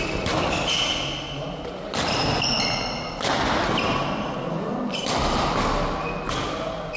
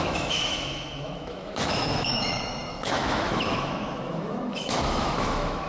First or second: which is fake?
second